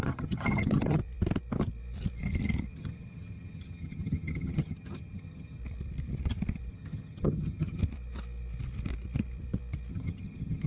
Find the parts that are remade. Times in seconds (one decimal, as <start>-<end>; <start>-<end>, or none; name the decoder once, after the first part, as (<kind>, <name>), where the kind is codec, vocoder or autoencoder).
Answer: 0.0-1.0 (vocoder, HiFi-GAN); 2.7-5.6; 6.7-7.8; 9.9-10.7